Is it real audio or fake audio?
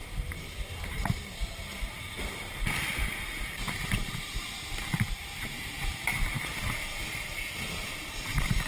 fake